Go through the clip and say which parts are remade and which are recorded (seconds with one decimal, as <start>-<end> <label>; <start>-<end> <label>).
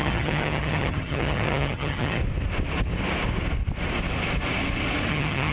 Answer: 0.0-2.2 remade; 2.2-5.1 recorded; 5.1-5.5 remade